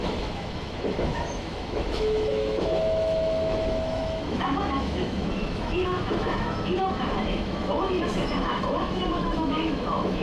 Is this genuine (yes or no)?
no